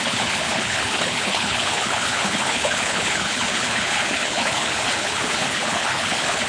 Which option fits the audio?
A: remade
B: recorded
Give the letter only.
A